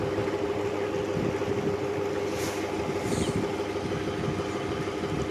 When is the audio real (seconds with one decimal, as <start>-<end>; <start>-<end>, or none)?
0.0-5.3